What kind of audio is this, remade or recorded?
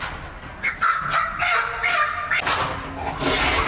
recorded